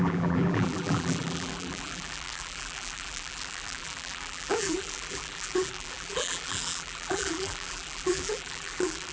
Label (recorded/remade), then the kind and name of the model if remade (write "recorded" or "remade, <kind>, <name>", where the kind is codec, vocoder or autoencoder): remade, vocoder, BigVGAN v2